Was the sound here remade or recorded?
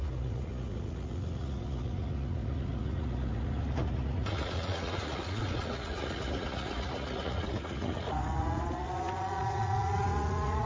remade